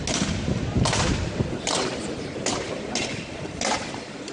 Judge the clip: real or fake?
real